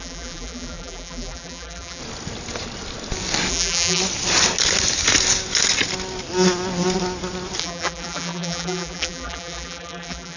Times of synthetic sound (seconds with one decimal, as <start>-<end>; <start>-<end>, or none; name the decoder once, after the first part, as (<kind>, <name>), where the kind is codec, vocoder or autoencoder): 0.0-2.0 (vocoder, BigVGAN v2); 3.5-4.0; 7.6-10.4